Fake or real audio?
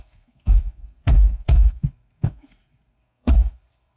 fake